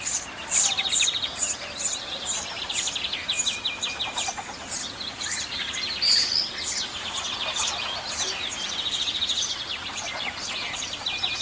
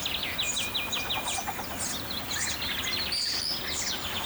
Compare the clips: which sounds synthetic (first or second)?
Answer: first